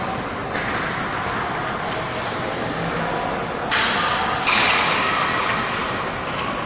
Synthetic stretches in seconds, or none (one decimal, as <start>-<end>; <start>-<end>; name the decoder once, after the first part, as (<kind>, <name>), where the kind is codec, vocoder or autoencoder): none